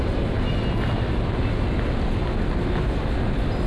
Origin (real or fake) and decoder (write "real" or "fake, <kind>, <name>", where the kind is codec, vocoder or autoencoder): real